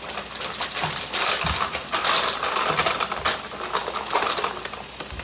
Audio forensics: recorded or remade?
recorded